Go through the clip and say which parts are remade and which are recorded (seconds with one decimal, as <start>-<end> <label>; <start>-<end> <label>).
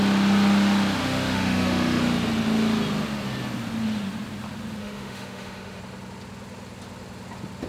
0.0-1.0 recorded; 1.0-2.0 remade; 2.0-4.8 recorded; 4.8-5.8 remade; 5.8-7.7 recorded